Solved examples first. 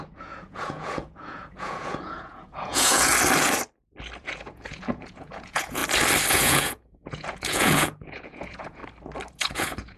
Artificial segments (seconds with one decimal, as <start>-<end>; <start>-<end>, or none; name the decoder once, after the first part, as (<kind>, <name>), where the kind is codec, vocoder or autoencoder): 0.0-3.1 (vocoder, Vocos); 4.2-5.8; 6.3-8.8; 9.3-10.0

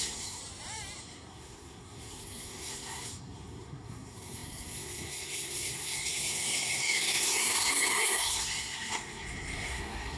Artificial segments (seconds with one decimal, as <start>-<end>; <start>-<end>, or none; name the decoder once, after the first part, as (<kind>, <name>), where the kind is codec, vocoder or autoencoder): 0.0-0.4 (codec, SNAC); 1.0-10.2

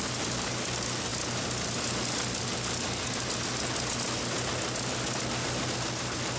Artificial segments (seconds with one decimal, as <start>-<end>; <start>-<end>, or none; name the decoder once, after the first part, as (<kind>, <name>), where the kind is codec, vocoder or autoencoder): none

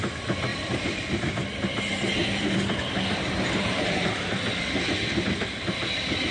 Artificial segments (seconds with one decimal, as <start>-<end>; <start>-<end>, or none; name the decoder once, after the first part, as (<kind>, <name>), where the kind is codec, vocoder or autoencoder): 0.5-1.8 (vocoder, BigVGAN v2); 2.2-5.6

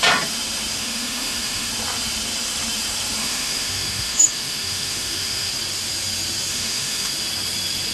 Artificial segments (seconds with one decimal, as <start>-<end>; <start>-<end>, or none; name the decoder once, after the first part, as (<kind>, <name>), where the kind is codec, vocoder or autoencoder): 0.8-1.7 (autoencoder, DAC-VAE); 3.2-5.5; 6.5-7.1